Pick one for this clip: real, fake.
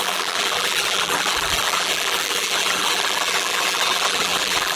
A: fake